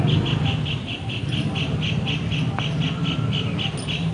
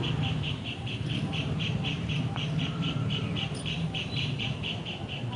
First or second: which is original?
first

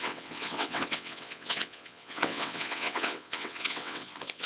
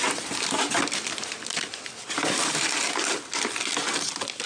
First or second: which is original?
second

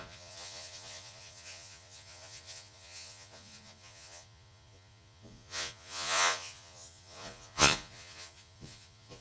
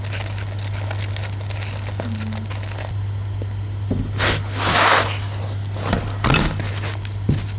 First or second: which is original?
second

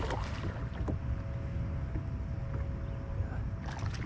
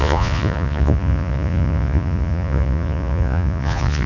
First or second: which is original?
first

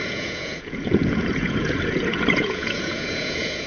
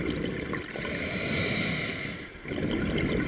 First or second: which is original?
second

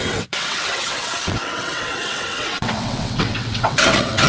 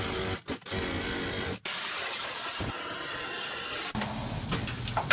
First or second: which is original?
second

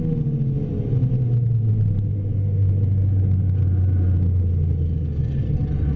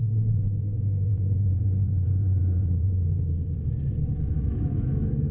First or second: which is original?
first